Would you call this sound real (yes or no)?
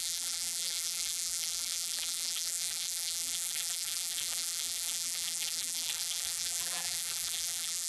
no